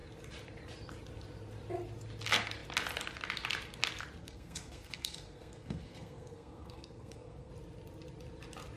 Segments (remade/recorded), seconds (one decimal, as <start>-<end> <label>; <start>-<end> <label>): 0.0-4.2 recorded; 4.2-7.5 remade; 7.5-8.8 recorded